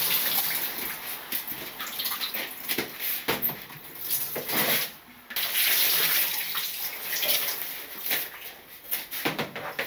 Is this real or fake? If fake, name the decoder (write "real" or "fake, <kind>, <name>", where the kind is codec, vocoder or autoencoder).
real